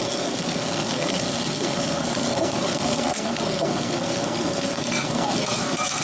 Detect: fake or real fake